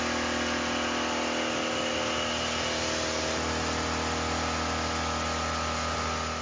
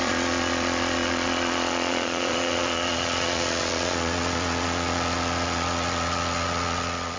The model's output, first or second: second